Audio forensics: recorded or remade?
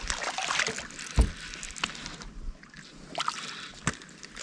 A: recorded